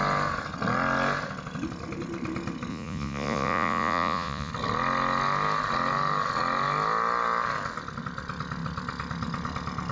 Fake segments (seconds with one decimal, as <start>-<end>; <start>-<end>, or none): 2.7-4.5